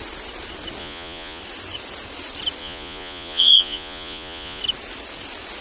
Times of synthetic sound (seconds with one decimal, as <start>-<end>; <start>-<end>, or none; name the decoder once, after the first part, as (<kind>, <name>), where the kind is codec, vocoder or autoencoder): 0.8-1.4 (vocoder, Vocos); 2.6-4.6